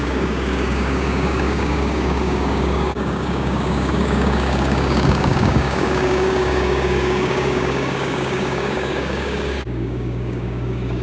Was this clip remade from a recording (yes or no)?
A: yes